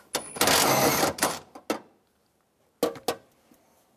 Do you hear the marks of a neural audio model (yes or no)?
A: no